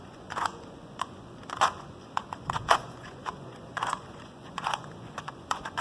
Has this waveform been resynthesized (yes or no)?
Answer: yes